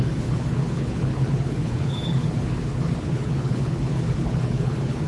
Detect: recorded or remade remade